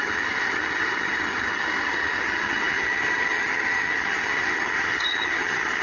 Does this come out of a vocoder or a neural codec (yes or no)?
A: yes